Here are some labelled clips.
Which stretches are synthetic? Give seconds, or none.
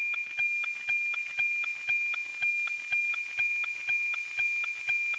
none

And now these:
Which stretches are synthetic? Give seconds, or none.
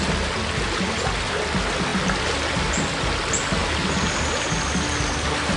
none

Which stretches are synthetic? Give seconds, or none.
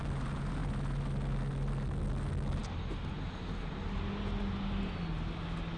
none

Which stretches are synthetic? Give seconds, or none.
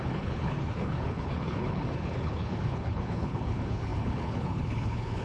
0.0-5.2 (codec, HILCodec)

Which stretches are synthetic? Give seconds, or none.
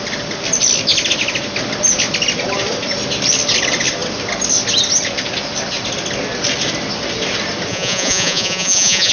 7.7-9.1 (vocoder, Vocos)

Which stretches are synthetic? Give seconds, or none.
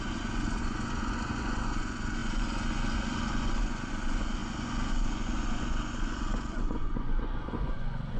0.0-8.2 (vocoder, Vocos)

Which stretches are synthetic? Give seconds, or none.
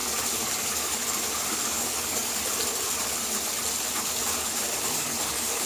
0.6-1.0 (codec, DAC); 1.5-2.3; 4.9-5.7